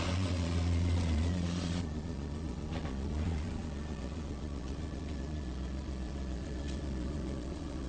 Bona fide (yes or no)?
no